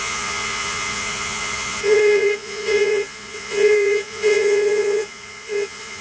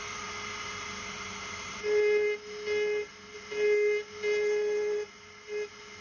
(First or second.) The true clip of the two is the second